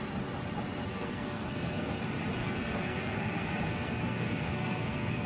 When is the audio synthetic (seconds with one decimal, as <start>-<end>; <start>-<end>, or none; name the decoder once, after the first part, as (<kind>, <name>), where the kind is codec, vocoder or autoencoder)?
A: 0.9-2.0 (codec, SNAC); 2.4-5.3